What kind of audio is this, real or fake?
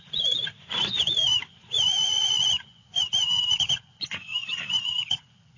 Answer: fake